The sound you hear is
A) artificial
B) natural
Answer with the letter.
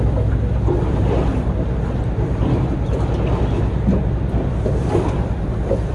B